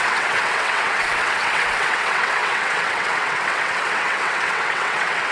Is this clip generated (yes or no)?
yes